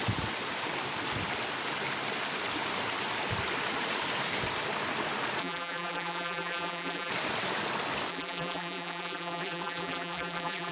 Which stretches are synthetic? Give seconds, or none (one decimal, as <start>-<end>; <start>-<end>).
5.4-7.1; 8.1-10.7